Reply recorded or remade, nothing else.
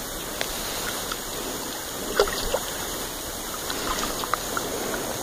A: recorded